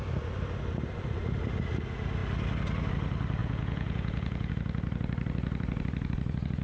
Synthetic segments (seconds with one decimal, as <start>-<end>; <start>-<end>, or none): 3.4-4.5